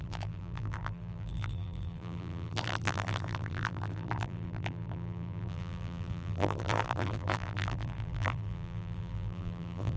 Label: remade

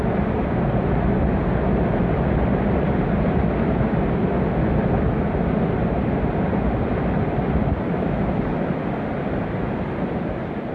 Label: recorded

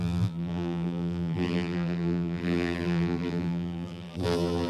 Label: remade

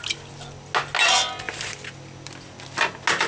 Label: recorded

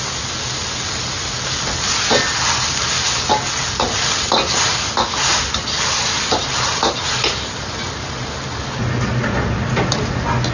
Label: recorded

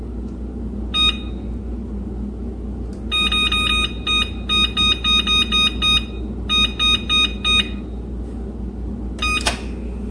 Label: recorded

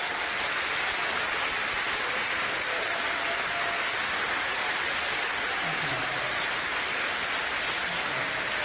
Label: recorded